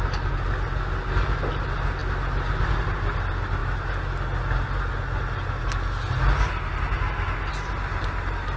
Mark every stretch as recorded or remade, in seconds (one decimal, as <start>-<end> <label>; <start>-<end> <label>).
0.0-8.6 recorded